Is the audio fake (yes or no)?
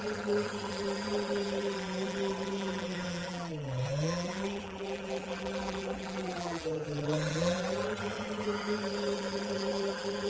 yes